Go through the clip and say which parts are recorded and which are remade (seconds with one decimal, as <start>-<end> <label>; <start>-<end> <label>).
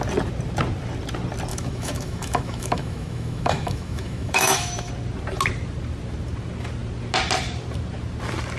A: 0.0-1.5 recorded; 1.5-4.9 remade; 4.9-8.6 recorded